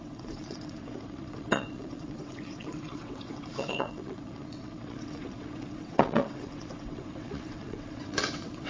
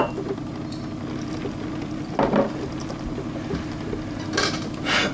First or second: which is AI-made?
first